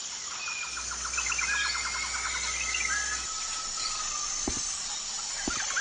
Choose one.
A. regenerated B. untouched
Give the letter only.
B